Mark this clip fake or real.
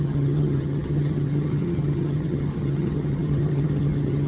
fake